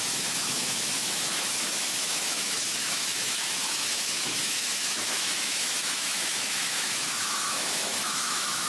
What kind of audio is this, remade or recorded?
remade